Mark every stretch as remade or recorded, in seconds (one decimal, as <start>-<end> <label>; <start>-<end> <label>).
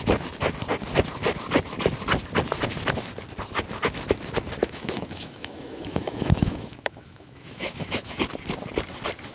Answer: 0.0-4.6 recorded; 4.6-8.2 remade; 8.2-9.3 recorded